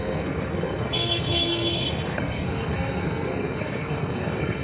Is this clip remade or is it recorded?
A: remade